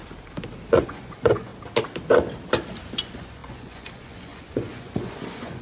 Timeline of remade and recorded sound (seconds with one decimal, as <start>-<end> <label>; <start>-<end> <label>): 0.0-0.7 recorded; 0.7-1.5 remade; 1.5-2.9 recorded; 2.9-5.6 remade